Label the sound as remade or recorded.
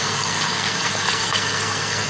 remade